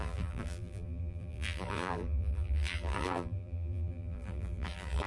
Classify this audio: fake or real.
fake